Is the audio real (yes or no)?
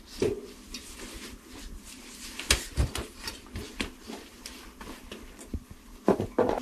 no